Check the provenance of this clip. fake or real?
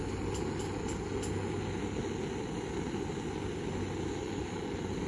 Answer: real